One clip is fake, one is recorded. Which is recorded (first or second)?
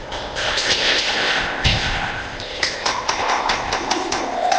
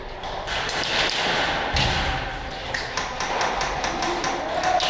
second